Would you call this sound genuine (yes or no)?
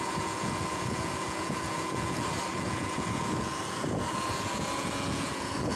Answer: no